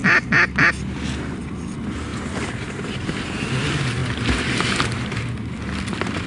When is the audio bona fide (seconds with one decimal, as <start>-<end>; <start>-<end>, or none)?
0.0-6.3